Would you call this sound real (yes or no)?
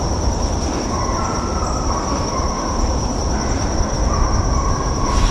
yes